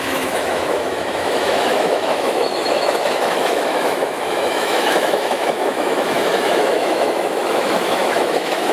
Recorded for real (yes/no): no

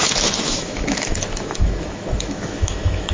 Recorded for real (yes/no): no